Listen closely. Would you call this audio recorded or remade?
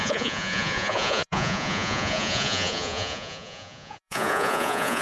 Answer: remade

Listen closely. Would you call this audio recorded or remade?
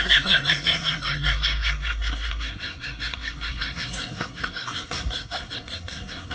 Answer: remade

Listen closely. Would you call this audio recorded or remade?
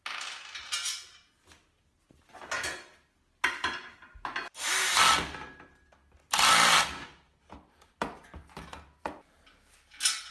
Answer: recorded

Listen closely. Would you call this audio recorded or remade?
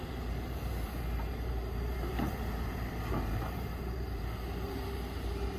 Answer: remade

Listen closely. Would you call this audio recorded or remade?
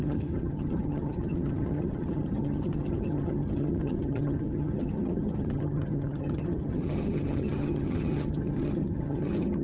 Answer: remade